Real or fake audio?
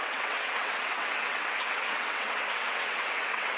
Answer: fake